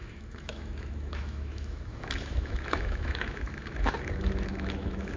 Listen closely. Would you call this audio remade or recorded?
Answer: remade